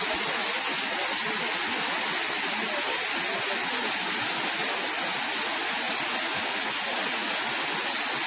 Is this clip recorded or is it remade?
recorded